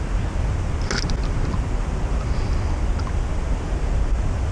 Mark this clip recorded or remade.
recorded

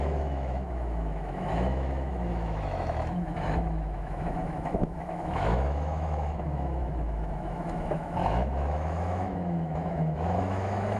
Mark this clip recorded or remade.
remade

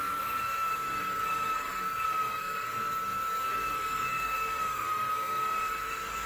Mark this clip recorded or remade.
remade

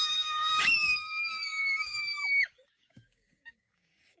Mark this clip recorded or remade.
remade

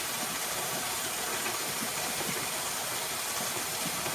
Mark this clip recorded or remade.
remade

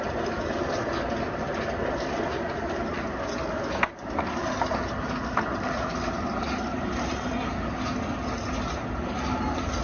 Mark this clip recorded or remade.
recorded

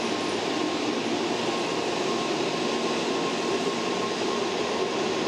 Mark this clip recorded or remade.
recorded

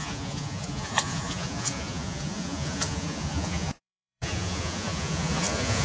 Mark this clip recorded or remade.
remade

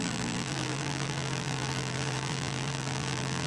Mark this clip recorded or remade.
remade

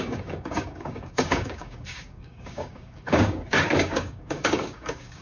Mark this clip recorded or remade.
remade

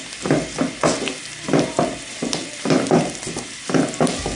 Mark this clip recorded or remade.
recorded